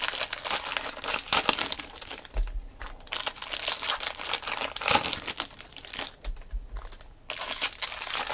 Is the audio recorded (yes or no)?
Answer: yes